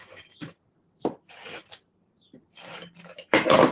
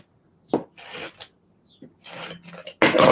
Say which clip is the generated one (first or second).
first